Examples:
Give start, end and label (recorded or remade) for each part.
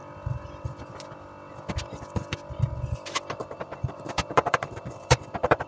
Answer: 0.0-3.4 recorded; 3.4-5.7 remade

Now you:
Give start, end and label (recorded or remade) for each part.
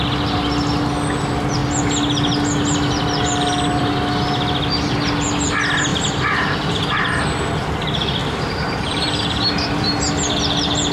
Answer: 0.0-5.9 recorded; 5.9-7.2 remade; 7.2-8.2 recorded; 8.2-10.1 remade; 10.1-10.9 recorded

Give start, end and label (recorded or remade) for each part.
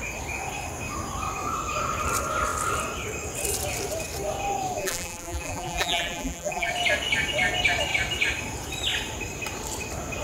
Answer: 0.0-4.8 recorded; 4.8-6.7 remade; 6.7-10.2 recorded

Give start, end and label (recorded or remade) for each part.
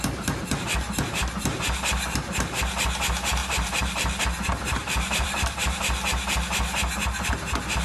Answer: 0.0-3.4 recorded; 3.4-4.2 remade; 4.2-4.8 recorded; 4.8-5.8 remade; 5.8-7.8 recorded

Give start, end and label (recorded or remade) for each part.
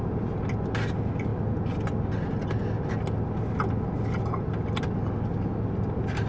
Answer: 0.0-6.3 recorded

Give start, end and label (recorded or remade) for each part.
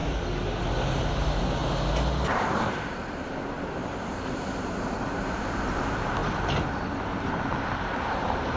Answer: 0.0-1.0 recorded; 1.0-1.6 remade; 1.6-2.3 recorded; 2.3-6.2 remade; 6.2-8.1 recorded; 8.1-8.6 remade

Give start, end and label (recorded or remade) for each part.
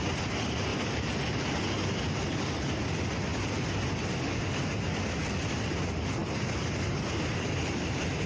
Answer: 0.0-0.7 recorded; 0.7-1.5 remade; 1.5-8.3 recorded